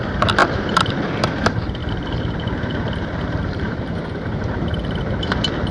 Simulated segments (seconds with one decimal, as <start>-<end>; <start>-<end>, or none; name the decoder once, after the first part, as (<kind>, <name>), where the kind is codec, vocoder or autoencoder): 1.8-5.2 (vocoder, BigVGAN v2)